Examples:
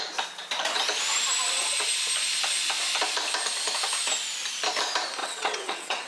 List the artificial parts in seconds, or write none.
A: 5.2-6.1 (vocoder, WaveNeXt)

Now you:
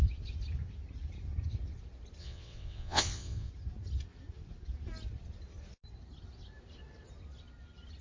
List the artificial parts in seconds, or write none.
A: 2.2-3.5 (vocoder, WaveNeXt)

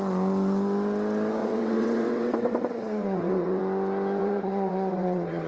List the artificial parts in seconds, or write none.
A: 1.4-3.6 (vocoder, WaveNeXt); 4.2-5.5

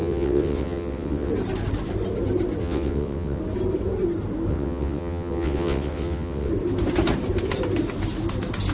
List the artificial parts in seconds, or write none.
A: 0.0-1.3 (vocoder, WaveNeXt); 2.6-3.4; 4.5-6.5

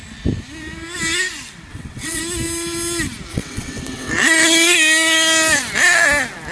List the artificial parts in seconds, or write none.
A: 1.7-2.2 (vocoder, WaveNeXt); 3.3-4.1